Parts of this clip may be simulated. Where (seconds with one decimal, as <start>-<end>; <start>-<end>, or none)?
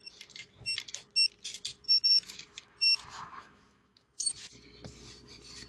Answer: 1.7-4.3